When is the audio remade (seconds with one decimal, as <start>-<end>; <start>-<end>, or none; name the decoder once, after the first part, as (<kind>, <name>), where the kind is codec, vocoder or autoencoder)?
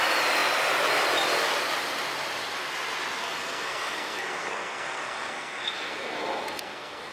3.2-7.1 (codec, SNAC)